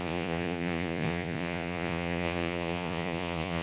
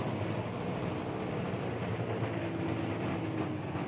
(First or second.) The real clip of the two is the second